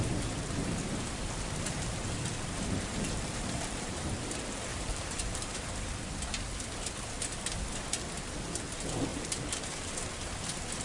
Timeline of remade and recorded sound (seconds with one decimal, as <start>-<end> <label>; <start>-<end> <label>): 0.0-2.9 recorded; 2.9-4.1 remade; 4.1-4.7 recorded; 4.7-5.5 remade; 5.5-9.1 recorded; 9.1-9.6 remade; 9.6-10.8 recorded